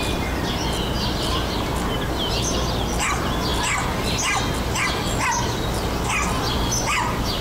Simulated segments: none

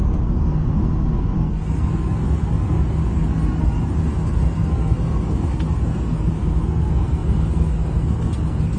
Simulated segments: 0.0-8.8 (codec, SNAC)

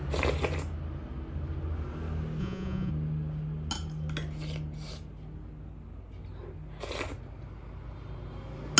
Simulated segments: 2.4-2.9 (vocoder, Vocos)